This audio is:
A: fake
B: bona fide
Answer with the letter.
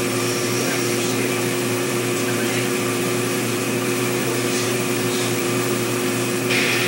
A